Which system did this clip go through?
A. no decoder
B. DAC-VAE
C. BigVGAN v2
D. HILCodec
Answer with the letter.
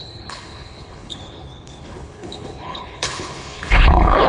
D